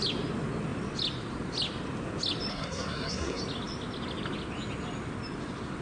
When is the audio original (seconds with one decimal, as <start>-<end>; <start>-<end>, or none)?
0.0-2.5; 3.4-5.8